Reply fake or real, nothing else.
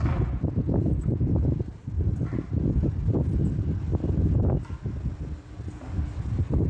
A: real